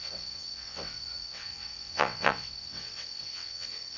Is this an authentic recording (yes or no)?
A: no